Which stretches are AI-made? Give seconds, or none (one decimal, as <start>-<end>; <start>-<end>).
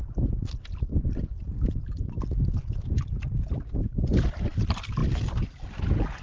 none